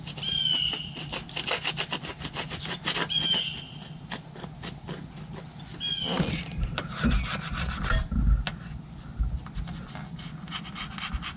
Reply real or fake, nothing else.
real